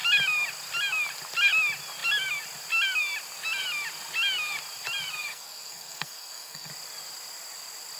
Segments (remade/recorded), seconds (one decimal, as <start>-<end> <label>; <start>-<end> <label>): 0.0-5.3 recorded; 5.3-6.7 remade; 6.7-8.0 recorded